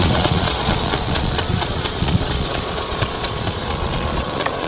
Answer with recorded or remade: remade